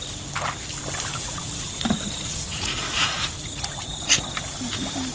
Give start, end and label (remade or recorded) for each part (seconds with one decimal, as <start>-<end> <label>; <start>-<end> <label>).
0.0-1.1 recorded; 1.1-4.2 remade; 4.2-5.1 recorded